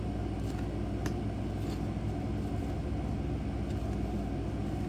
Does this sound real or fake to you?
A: real